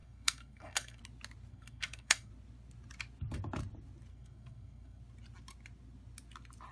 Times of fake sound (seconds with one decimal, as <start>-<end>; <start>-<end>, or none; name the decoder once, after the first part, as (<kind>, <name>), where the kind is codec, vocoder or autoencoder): 0.0-1.0 (codec, SNAC); 1.5-2.3; 4.1-5.0